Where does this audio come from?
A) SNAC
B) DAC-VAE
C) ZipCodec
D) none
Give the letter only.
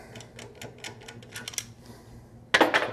D